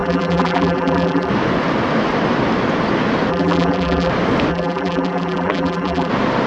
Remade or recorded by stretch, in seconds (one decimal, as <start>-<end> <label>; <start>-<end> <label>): 0.0-1.3 remade; 1.3-3.3 recorded; 3.3-4.1 remade; 4.1-4.5 recorded; 4.5-6.1 remade; 6.1-6.5 recorded